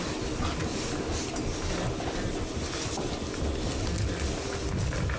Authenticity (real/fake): real